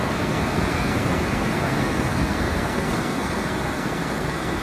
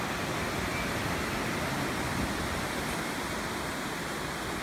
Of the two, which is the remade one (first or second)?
first